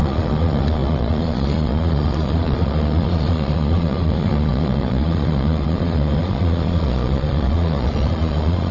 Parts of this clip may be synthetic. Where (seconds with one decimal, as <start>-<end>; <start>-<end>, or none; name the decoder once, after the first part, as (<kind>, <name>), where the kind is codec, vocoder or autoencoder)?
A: 0.0-8.7 (vocoder, Vocos)